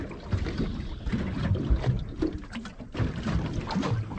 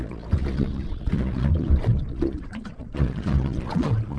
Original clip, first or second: first